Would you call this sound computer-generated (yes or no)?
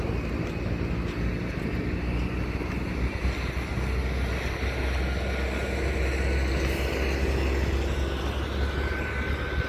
no